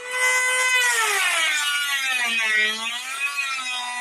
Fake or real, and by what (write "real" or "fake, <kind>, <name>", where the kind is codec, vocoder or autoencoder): real